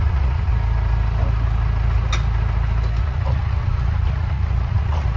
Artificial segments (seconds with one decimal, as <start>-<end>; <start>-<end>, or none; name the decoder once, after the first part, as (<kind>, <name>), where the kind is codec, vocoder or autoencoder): 0.0-0.5 (vocoder, Vocos); 3.0-5.2